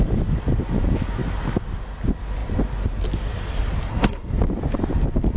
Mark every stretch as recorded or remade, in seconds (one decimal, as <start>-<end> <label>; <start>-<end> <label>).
0.0-3.9 recorded; 3.9-4.4 remade; 4.4-5.4 recorded